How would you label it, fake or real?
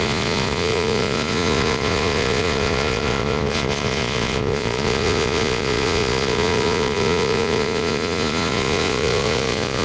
fake